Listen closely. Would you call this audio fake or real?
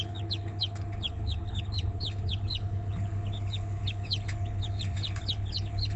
fake